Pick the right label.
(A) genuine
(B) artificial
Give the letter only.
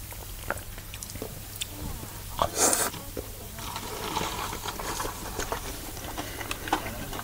A